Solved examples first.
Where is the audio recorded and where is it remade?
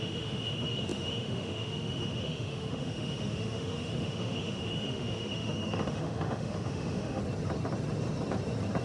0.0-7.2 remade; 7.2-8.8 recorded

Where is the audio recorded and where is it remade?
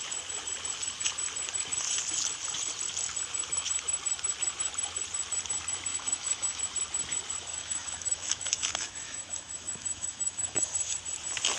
0.0-5.9 recorded; 5.9-6.6 remade; 6.6-7.5 recorded; 7.5-10.9 remade; 10.9-11.6 recorded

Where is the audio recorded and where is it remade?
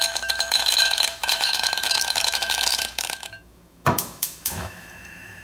0.0-5.4 remade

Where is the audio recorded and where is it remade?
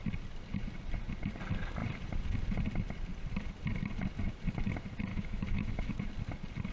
0.0-5.1 recorded; 5.1-5.9 remade; 5.9-6.7 recorded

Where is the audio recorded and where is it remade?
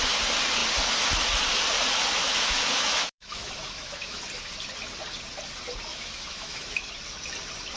0.0-2.2 recorded; 2.2-4.2 remade; 4.2-5.9 recorded; 5.9-6.9 remade; 6.9-7.8 recorded